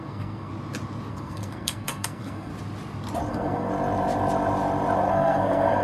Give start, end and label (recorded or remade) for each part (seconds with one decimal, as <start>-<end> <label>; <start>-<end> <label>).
0.0-0.5 remade; 0.5-1.1 recorded; 1.1-2.5 remade; 2.5-3.3 recorded; 3.3-3.7 remade; 3.7-5.1 recorded; 5.1-5.8 remade